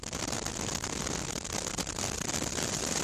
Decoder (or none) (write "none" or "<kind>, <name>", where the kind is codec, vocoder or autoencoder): none